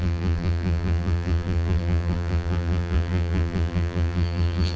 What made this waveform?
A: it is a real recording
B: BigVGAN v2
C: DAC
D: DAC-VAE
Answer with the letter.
B